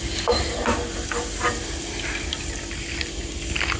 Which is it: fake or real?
real